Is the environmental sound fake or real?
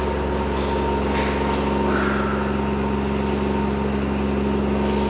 real